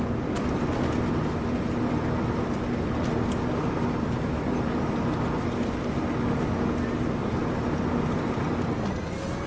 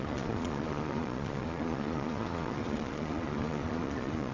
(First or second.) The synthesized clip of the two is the second